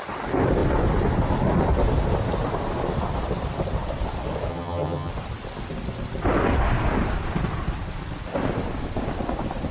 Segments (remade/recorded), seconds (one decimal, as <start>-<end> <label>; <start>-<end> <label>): 0.0-4.5 recorded; 4.5-5.1 remade; 5.1-9.7 recorded